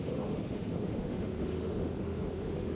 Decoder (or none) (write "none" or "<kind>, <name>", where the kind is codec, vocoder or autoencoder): autoencoder, DAC-VAE